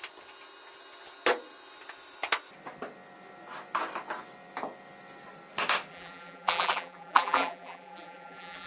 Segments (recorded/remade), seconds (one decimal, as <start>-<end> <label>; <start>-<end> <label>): 0.0-5.9 recorded; 5.9-8.7 remade